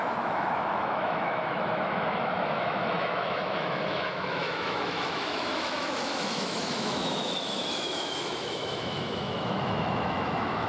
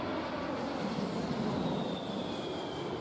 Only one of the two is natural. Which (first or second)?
second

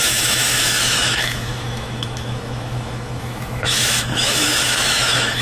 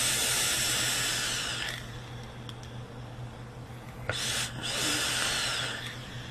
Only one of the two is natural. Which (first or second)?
second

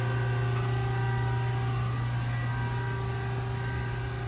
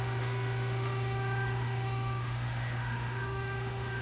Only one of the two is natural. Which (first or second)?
first